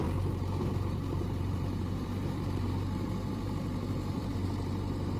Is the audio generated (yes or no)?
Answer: yes